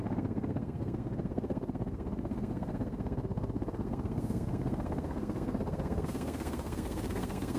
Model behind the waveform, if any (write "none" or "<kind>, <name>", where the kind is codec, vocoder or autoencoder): codec, SNAC